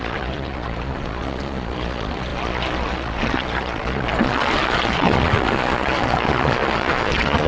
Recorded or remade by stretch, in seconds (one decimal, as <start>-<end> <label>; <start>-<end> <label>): 0.0-7.5 remade